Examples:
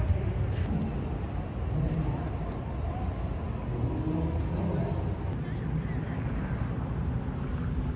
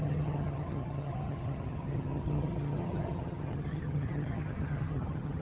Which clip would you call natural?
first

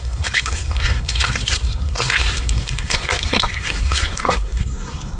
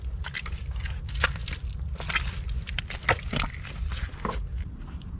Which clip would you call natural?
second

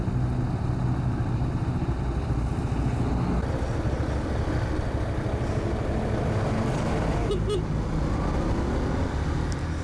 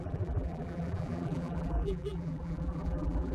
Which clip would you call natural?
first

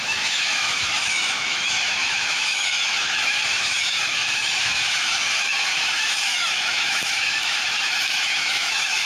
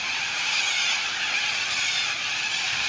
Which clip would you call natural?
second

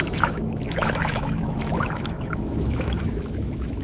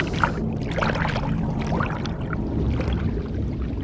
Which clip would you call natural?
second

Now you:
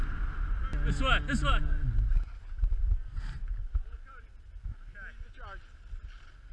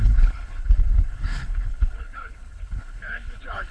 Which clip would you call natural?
first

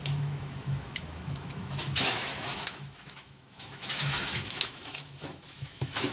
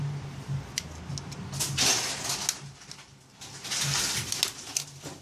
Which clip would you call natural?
second